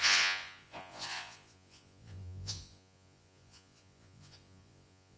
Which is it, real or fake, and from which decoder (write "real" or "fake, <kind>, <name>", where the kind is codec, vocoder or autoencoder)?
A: fake, vocoder, Vocos